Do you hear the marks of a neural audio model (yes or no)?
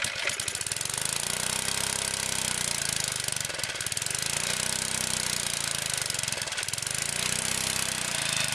no